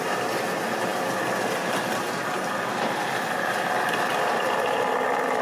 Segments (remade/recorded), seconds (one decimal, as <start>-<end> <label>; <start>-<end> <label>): 0.0-5.4 recorded